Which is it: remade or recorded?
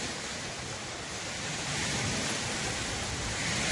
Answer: recorded